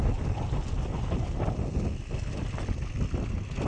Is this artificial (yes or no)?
no